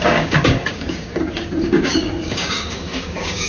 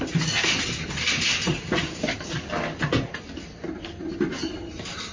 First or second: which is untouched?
second